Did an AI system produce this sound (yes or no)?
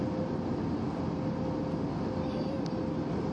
no